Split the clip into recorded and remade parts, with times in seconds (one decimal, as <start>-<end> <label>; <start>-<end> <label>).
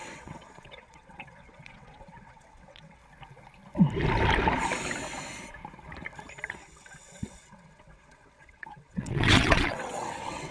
0.0-3.0 remade; 3.0-6.5 recorded; 6.5-10.5 remade